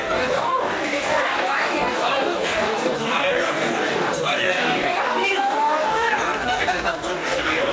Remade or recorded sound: remade